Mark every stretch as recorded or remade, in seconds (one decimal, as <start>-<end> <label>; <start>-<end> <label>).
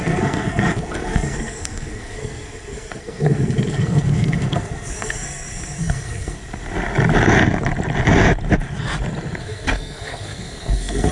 0.0-6.4 remade; 6.4-9.4 recorded; 9.4-11.1 remade